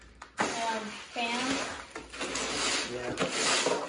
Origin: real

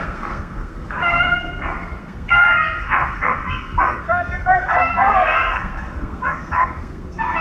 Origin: fake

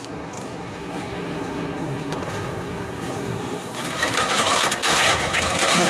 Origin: fake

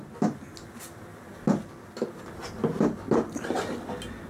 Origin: real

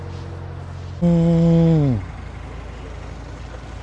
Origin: real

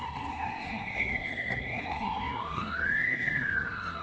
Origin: fake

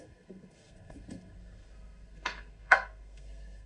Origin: fake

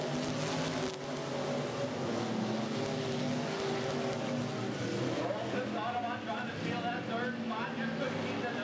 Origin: real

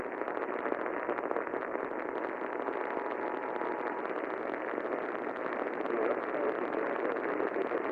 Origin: real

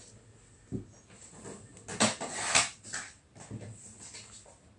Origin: real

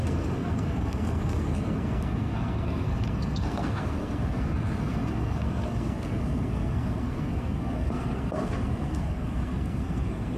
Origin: fake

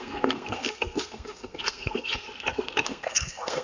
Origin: fake